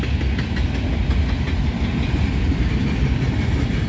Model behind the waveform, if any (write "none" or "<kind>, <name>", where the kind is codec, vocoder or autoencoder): none